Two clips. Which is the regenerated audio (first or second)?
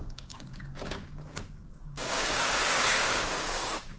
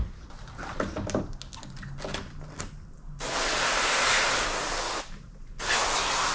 first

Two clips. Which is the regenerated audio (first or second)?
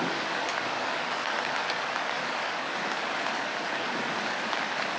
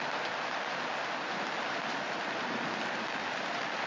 first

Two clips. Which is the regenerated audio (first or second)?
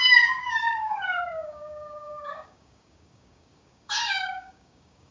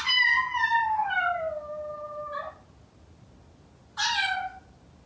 first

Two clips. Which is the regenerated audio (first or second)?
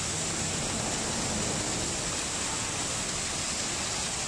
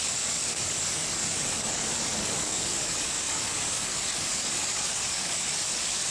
second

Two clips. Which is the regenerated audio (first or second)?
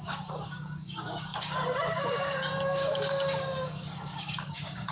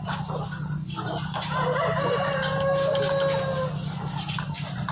first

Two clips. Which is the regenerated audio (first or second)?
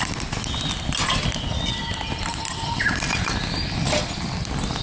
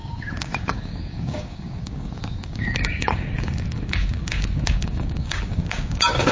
second